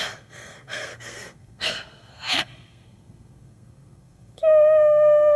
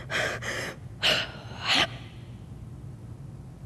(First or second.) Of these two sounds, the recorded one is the second